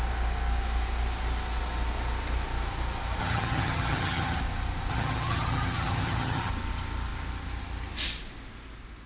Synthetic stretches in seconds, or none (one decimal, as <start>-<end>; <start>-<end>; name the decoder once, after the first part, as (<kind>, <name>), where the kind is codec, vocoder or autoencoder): 3.2-4.4 (vocoder, HiFi-GAN); 4.9-6.5